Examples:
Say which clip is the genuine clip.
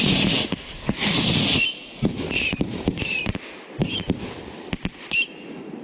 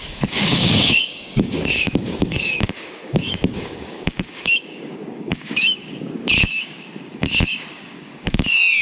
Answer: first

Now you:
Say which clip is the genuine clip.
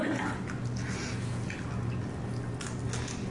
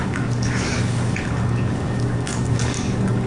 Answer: first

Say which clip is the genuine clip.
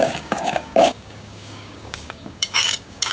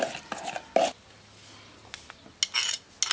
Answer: second